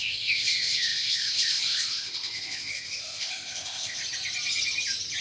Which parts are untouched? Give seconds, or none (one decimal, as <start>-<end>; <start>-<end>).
4.0-5.2